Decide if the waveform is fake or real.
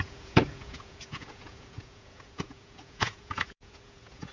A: fake